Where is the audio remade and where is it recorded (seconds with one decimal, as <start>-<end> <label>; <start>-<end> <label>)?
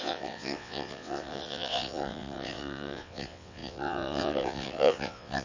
0.0-5.4 remade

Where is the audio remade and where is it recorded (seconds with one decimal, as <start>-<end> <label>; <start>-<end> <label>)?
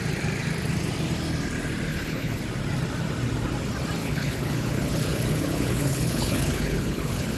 0.0-1.9 recorded; 1.9-2.4 remade; 2.4-4.0 recorded; 4.0-7.4 remade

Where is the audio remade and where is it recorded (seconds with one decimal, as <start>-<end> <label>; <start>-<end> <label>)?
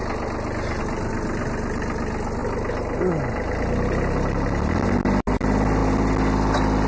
0.0-6.9 recorded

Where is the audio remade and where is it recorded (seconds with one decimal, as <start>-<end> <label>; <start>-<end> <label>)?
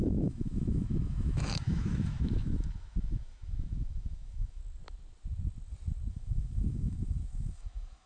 0.0-4.6 remade; 4.6-6.1 recorded; 6.1-8.1 remade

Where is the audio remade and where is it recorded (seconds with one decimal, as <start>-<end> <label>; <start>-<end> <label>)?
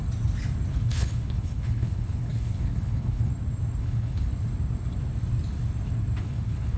0.0-0.7 recorded; 0.7-3.3 remade; 3.3-3.8 recorded; 3.8-4.3 remade; 4.3-6.2 recorded; 6.2-6.8 remade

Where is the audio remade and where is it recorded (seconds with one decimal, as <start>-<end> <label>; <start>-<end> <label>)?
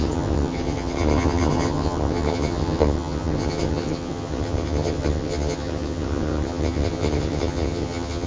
0.0-8.3 remade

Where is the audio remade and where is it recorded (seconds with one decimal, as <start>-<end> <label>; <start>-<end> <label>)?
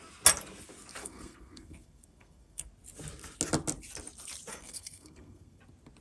0.0-1.0 recorded; 1.0-2.7 remade; 2.7-4.5 recorded; 4.5-5.6 remade; 5.6-6.0 recorded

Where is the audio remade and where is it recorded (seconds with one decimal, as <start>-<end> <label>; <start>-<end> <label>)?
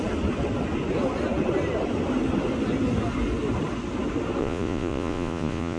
0.0-4.4 recorded; 4.4-5.8 remade